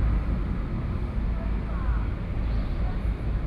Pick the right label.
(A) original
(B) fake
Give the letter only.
A